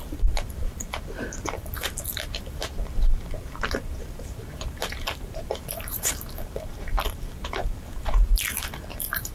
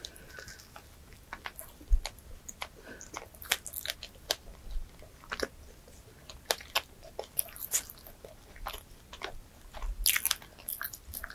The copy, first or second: first